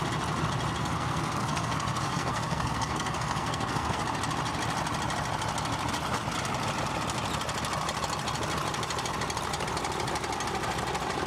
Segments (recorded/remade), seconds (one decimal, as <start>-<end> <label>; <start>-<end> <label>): 0.0-0.8 recorded; 0.8-4.0 remade; 4.0-11.3 recorded